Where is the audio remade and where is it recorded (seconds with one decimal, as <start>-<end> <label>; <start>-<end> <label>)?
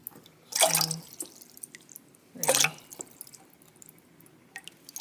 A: 0.0-5.0 recorded